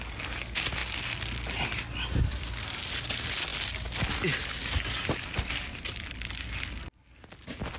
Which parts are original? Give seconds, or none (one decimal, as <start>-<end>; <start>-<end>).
0.0-7.8